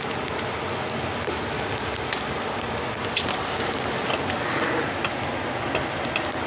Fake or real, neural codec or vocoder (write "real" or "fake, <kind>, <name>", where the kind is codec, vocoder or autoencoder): real